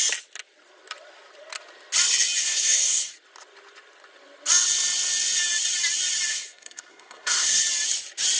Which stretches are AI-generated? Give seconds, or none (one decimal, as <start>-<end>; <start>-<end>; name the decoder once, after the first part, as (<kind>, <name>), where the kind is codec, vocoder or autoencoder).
2.4-3.1 (codec, SNAC); 6.3-7.6

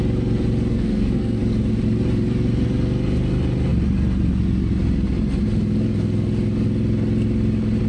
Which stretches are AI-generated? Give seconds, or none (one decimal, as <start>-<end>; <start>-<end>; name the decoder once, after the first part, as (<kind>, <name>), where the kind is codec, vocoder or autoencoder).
0.7-1.4 (codec, SNAC)

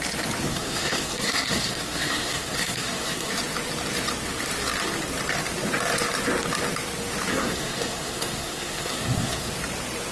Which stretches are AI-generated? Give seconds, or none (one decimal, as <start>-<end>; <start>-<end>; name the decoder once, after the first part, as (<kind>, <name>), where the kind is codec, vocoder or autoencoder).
0.5-3.3 (codec, SNAC); 7.3-9.5

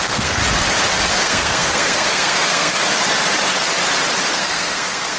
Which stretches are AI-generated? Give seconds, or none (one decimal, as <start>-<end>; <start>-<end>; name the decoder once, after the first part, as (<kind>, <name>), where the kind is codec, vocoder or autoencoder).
0.0-0.4 (codec, SNAC); 1.1-2.8; 4.3-5.2

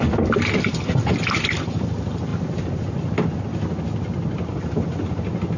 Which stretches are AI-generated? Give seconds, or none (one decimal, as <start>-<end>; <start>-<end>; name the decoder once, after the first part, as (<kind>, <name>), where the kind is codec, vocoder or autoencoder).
none

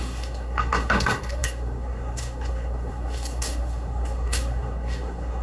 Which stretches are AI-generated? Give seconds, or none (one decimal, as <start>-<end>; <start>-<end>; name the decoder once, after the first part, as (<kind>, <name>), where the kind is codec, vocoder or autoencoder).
0.0-5.4 (codec, SNAC)